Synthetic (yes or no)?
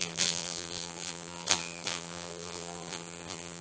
yes